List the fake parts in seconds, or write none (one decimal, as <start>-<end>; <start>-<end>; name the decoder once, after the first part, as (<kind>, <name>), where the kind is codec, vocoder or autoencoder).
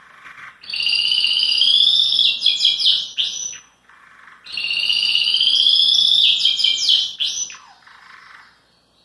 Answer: 3.4-4.0 (vocoder, Vocos)